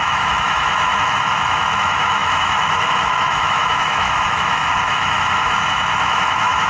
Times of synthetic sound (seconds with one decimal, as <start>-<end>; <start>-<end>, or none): 0.0-6.7